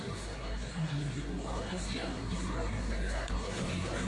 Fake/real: fake